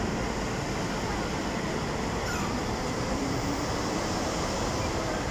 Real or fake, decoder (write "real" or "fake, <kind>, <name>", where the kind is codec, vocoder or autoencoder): fake, vocoder, BigVGAN v2